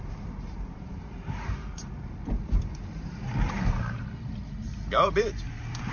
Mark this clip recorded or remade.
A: remade